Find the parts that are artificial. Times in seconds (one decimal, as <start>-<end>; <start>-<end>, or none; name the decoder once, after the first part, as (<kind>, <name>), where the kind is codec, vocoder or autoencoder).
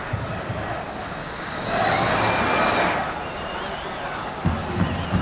1.2-2.3 (codec, DAC)